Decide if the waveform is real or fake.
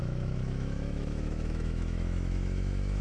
fake